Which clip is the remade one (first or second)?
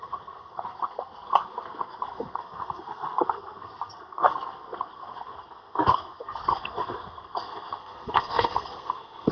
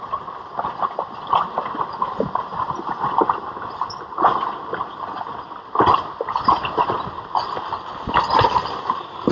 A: first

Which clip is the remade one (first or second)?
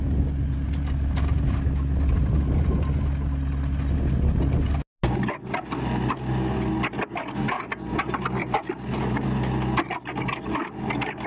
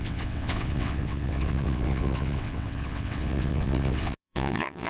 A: second